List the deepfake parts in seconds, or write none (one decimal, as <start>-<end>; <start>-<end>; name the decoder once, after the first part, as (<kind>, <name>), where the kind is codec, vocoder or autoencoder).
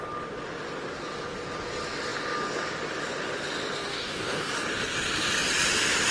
3.9-4.5 (codec, DAC)